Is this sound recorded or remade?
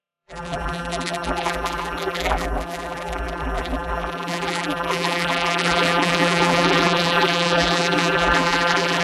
remade